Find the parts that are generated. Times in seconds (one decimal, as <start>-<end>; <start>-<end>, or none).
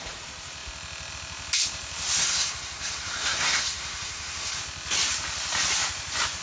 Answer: 2.2-4.6